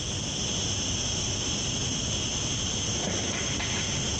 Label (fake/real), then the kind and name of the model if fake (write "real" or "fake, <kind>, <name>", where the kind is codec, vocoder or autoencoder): real